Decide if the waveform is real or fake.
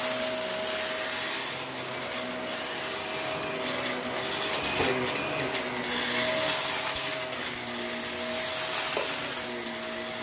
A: real